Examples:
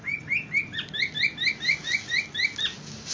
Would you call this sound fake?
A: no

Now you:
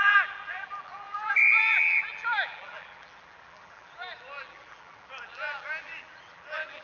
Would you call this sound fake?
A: yes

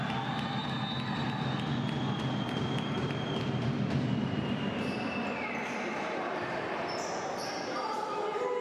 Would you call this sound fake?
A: no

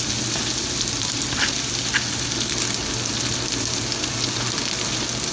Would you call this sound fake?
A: no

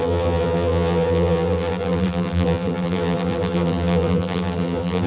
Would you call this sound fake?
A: yes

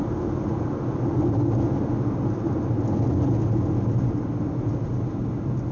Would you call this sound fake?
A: no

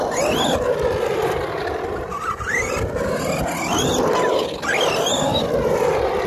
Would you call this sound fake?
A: no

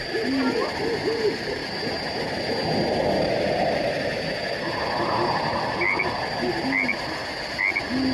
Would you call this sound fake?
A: no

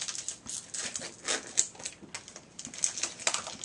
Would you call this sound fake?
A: no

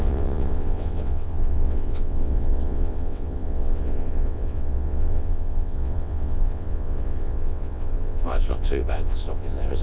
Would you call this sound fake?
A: yes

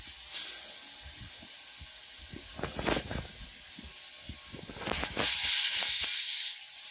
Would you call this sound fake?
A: no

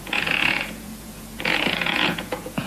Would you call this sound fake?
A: yes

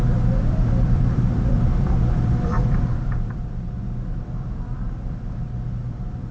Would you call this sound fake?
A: yes